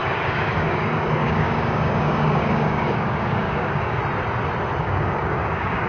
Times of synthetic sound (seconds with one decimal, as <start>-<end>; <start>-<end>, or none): 0.0-4.0; 4.8-5.9